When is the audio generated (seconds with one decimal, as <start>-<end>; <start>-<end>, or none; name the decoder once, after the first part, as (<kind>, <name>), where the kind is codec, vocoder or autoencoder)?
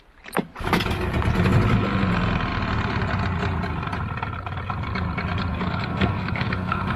5.5-7.0 (codec, SNAC)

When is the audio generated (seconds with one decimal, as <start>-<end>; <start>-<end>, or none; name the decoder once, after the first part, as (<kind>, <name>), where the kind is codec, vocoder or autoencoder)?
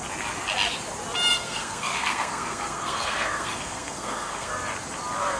1.3-4.5 (codec, SNAC)